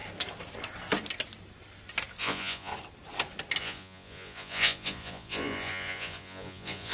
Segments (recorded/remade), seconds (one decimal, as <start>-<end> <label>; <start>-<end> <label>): 0.0-2.2 recorded; 2.2-2.7 remade; 2.7-3.6 recorded; 3.6-6.9 remade